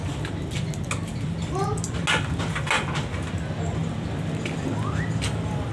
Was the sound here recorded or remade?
recorded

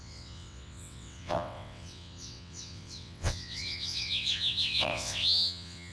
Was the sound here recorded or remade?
remade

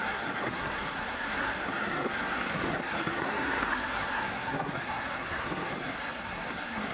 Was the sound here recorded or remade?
remade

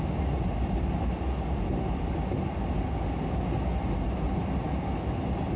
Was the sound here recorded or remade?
recorded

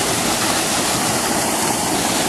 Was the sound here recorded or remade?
recorded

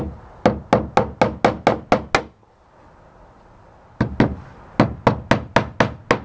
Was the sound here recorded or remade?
recorded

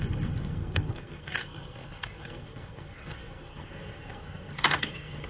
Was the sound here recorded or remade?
remade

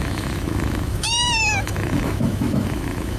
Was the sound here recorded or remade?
remade